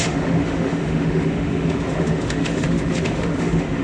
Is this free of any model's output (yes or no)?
no